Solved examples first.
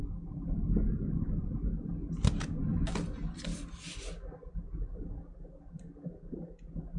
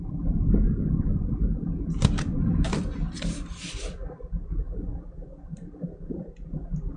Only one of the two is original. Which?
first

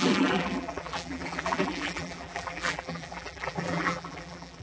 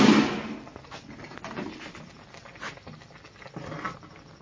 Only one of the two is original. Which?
second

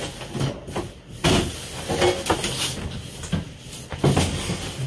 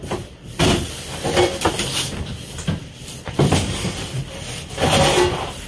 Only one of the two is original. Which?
first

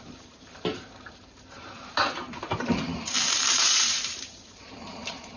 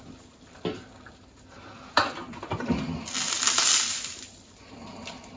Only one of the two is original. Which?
second